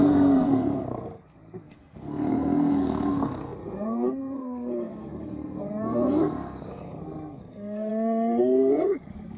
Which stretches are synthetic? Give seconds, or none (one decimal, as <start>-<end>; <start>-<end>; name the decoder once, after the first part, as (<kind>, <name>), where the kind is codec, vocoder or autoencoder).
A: 0.0-7.9 (codec, SNAC); 8.4-9.4